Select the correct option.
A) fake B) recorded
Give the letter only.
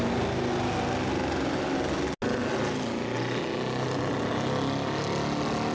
B